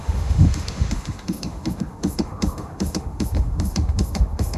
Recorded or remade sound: remade